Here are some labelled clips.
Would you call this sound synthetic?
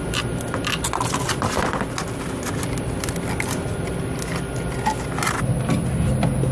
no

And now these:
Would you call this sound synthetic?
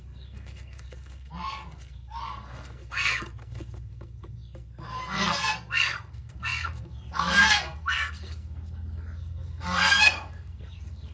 yes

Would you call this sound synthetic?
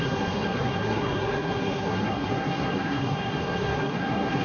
yes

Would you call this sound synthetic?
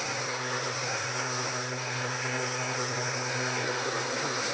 yes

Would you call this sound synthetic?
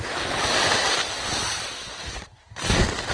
no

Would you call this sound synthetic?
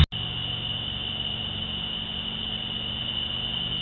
no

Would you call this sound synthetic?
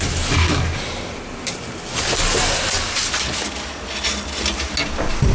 no